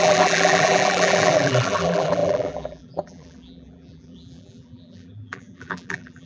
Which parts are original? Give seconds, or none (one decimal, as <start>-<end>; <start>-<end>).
none